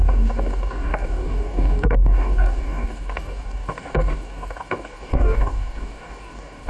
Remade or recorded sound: remade